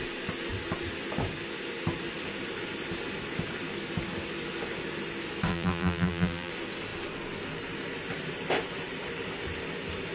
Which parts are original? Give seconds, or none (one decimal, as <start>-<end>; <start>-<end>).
0.0-5.5; 6.5-10.1